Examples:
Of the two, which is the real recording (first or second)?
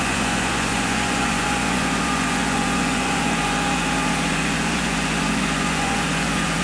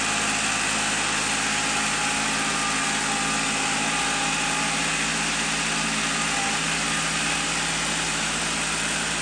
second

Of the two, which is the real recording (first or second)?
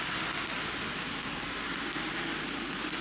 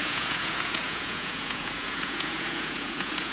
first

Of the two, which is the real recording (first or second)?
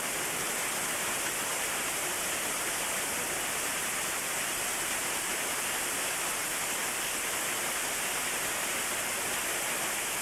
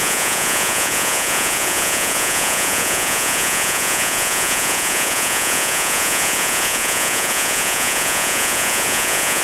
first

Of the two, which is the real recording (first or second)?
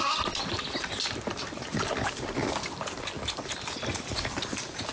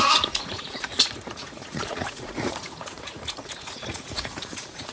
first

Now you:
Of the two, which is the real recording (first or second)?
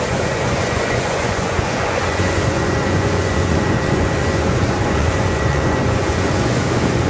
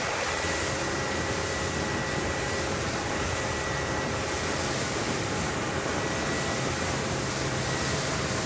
second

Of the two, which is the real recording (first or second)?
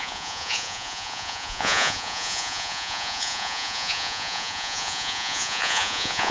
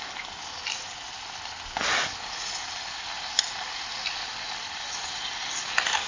second